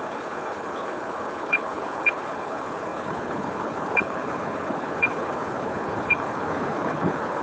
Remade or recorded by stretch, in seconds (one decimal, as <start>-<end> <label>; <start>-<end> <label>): 0.0-7.4 remade